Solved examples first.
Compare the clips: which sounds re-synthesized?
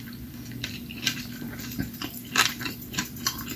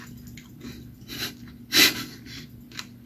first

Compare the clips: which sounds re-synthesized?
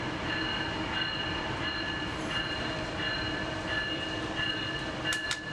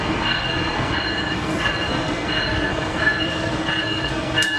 second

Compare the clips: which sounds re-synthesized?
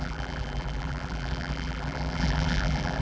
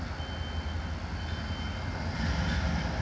first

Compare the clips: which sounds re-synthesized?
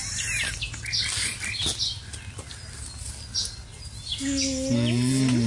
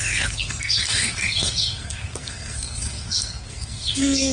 second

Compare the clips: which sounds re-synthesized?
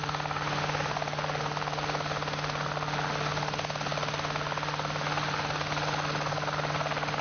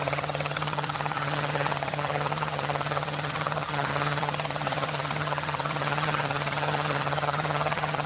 second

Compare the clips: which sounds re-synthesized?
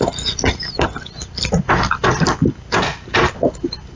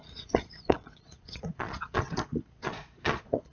second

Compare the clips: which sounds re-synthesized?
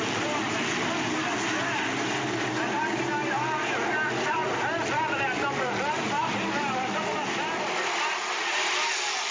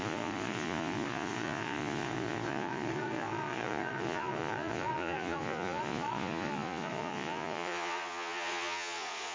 second